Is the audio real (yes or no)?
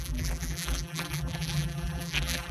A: no